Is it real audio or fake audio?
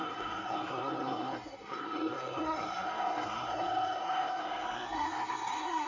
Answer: fake